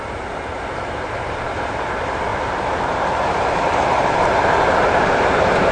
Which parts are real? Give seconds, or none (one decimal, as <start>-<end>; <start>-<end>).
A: 2.3-3.0